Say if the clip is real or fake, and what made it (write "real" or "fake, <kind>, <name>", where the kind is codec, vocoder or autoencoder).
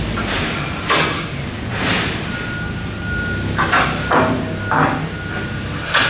real